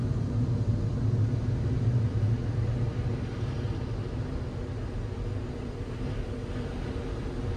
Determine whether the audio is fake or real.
real